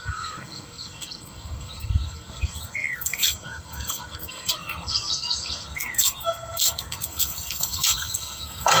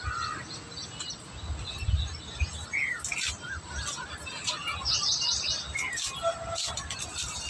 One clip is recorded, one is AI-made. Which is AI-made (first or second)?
first